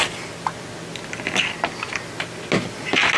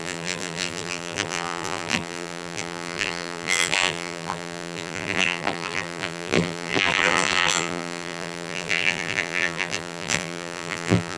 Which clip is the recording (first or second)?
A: first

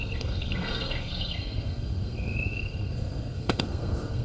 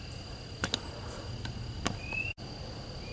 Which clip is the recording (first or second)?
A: second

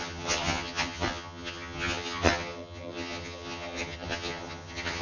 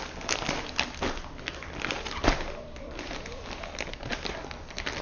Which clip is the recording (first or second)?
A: second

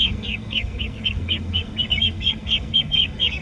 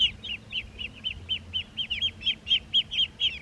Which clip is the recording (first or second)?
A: second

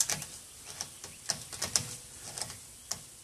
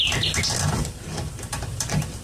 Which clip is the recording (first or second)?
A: first